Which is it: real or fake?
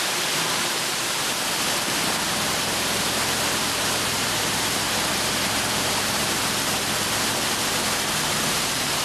fake